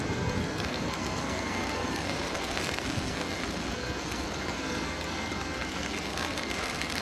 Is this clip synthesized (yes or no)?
yes